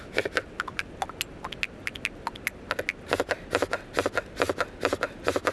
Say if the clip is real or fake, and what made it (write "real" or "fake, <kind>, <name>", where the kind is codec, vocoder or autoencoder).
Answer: real